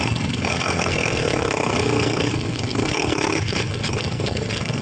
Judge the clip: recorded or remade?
remade